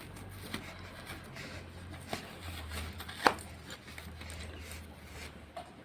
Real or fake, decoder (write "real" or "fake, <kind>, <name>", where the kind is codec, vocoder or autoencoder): real